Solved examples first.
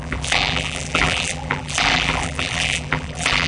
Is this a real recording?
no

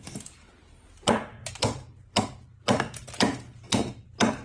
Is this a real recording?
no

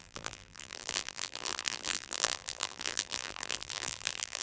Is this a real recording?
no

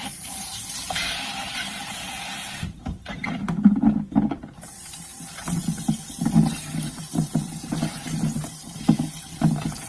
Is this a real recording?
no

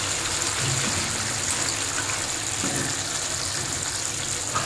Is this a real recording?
yes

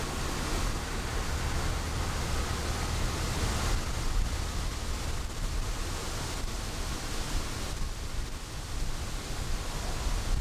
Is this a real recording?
yes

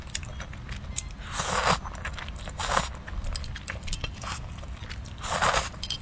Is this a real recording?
yes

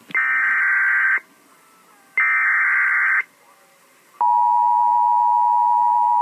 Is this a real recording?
yes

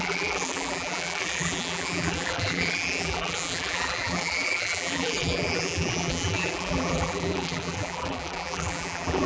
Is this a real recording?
no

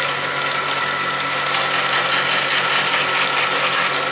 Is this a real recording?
yes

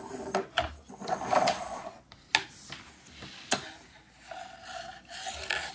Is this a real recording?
yes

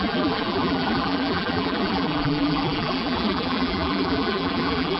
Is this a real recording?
no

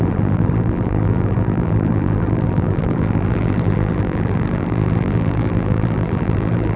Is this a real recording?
no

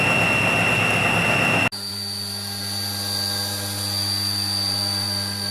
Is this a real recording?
yes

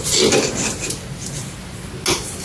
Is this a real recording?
yes